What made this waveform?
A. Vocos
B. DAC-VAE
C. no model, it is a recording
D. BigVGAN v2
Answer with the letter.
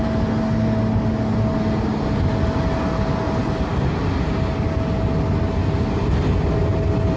C